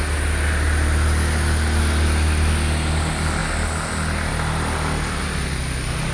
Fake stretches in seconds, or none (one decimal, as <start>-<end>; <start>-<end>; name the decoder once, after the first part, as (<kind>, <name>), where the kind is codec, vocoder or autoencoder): none